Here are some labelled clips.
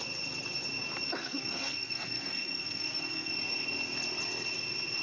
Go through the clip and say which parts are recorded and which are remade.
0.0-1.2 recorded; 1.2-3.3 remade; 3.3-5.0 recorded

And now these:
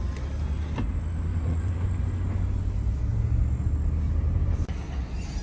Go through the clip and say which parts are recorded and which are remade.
0.0-1.3 recorded; 1.3-1.9 remade; 1.9-5.4 recorded

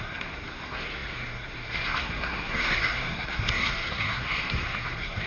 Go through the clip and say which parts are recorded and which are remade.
0.0-5.3 remade

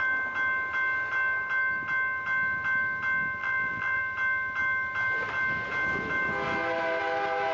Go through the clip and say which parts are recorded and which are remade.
0.0-3.4 recorded; 3.4-4.0 remade; 4.0-7.5 recorded

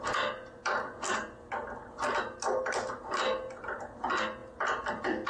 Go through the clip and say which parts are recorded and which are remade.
0.0-5.3 recorded